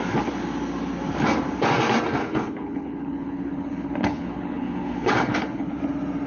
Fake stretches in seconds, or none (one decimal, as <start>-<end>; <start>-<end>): 2.2-5.8